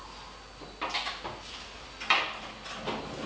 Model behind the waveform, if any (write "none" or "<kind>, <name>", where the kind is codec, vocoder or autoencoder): none